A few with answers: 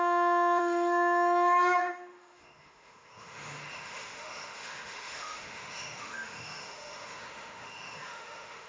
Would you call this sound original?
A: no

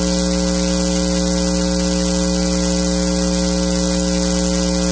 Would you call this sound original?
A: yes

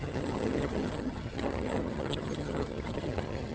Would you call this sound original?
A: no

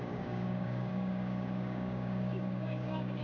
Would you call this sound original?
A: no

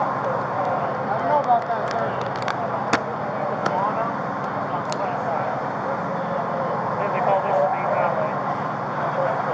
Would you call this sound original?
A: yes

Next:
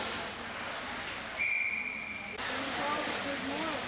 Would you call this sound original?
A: yes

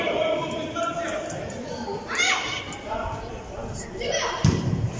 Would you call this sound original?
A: no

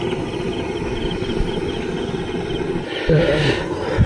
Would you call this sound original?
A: yes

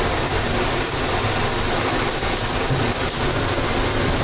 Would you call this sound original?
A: yes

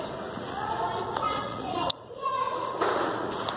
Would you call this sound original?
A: no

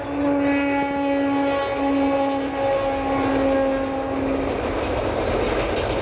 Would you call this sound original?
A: yes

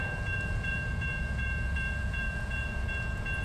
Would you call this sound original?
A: no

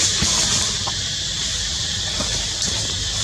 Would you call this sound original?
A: yes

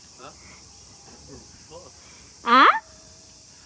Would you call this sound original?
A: no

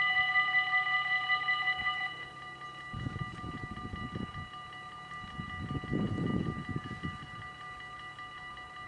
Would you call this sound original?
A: yes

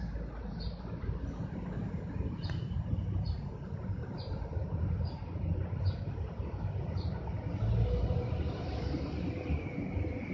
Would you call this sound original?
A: yes